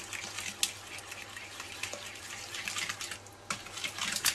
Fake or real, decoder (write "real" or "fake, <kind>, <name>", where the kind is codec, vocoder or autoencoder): real